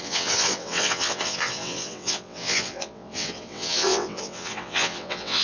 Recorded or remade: remade